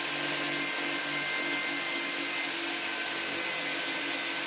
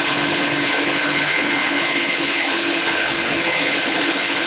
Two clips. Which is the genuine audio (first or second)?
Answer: first